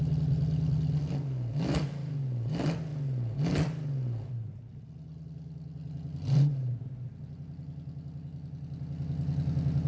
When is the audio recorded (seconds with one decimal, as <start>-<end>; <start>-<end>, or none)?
0.0-9.9